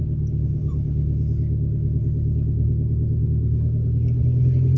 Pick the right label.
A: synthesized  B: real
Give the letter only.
B